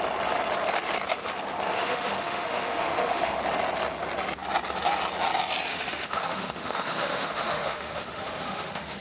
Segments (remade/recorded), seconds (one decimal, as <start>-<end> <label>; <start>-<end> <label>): 0.0-1.7 recorded; 1.7-3.4 remade; 3.4-5.7 recorded; 5.7-9.0 remade